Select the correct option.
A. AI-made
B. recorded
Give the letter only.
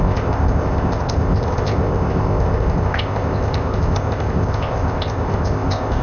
A